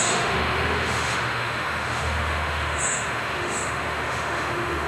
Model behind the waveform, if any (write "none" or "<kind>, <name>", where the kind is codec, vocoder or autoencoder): autoencoder, DAC-VAE